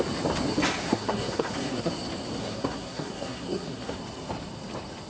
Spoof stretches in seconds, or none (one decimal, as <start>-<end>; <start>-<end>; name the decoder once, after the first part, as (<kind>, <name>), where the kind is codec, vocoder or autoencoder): 0.8-1.9 (codec, SNAC); 2.4-4.0